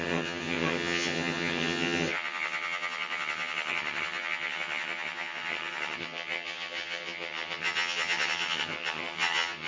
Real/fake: fake